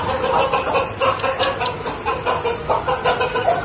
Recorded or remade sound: recorded